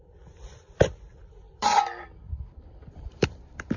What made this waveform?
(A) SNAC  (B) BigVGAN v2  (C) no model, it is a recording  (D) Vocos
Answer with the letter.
B